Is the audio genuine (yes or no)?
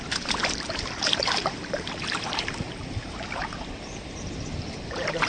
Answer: no